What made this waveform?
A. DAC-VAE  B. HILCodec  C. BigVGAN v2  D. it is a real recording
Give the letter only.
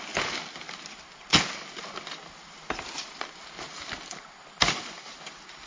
D